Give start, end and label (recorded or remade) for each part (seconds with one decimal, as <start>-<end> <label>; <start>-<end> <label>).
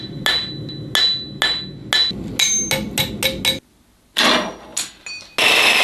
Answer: 0.0-5.8 recorded